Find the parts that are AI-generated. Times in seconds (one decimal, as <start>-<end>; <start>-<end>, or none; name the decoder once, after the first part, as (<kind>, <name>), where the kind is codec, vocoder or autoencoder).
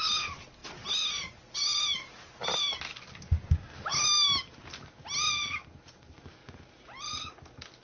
none